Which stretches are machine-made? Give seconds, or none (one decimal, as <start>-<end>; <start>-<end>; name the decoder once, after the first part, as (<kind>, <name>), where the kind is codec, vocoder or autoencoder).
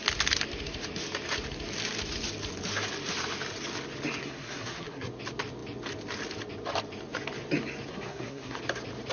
4.2-5.1 (codec, SNAC); 7.9-8.6